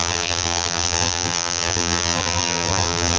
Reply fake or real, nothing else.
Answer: fake